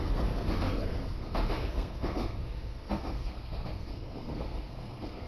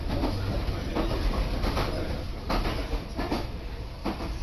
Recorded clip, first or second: second